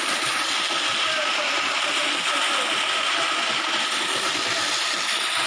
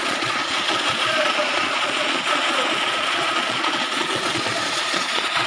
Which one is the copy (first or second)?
second